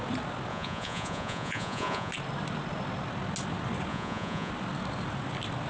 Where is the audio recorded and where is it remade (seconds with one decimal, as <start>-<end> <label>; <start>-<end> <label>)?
0.0-0.5 recorded; 0.5-2.1 remade; 2.1-3.9 recorded; 3.9-4.5 remade; 4.5-5.7 recorded